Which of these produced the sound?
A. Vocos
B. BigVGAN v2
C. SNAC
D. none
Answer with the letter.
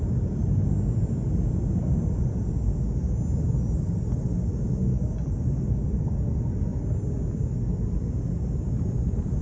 D